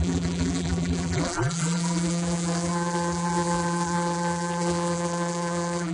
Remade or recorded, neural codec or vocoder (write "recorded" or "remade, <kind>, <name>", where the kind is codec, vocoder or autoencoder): remade, vocoder, BigVGAN v2